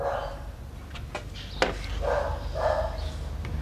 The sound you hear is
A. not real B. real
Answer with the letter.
B